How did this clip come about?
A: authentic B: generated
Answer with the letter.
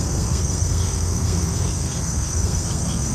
B